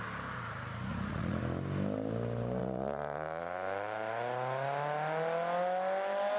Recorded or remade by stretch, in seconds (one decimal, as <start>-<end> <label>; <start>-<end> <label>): 0.0-0.9 recorded; 0.9-1.4 remade; 1.4-2.6 recorded; 2.6-3.4 remade; 3.4-6.4 recorded